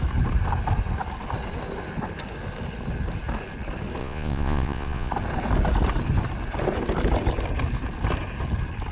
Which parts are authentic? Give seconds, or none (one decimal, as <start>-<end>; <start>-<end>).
0.0-4.0; 5.1-8.9